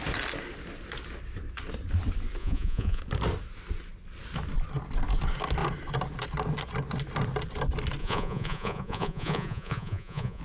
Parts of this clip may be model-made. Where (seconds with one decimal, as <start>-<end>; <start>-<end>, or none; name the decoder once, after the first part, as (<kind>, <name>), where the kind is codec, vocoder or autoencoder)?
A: 2.4-3.0 (vocoder, Vocos); 8.0-10.4